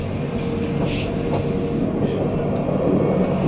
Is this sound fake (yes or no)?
no